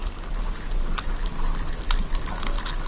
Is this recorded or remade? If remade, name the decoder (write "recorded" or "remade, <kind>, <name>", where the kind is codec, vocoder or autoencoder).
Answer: recorded